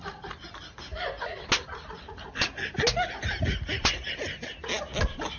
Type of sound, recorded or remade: recorded